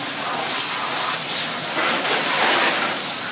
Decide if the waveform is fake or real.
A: real